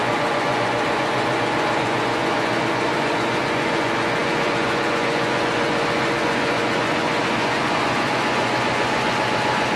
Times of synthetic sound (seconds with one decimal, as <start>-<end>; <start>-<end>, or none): 0.0-9.8